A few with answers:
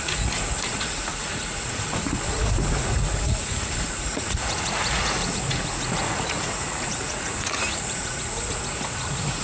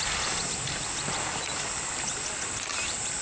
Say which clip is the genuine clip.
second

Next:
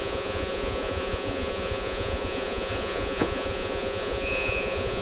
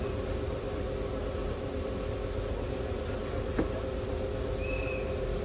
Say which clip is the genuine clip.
second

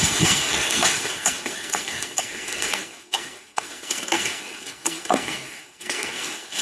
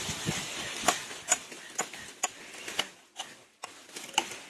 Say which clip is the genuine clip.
second